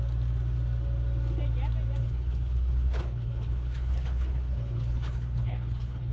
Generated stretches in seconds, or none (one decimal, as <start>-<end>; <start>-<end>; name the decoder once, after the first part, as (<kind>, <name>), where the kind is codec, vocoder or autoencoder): 2.0-6.1 (codec, HILCodec)